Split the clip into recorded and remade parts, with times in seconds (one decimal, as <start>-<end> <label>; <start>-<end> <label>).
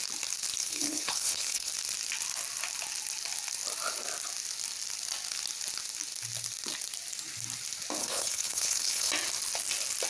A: 0.0-0.6 recorded; 0.6-1.7 remade; 1.7-8.0 recorded; 8.0-9.1 remade; 9.1-10.1 recorded